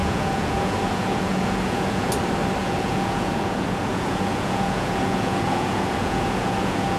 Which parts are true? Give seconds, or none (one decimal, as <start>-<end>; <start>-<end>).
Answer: 2.1-2.6